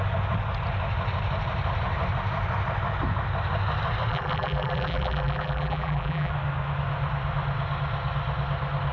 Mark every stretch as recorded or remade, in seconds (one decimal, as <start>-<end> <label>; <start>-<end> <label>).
0.0-4.1 recorded; 4.1-6.3 remade; 6.3-8.9 recorded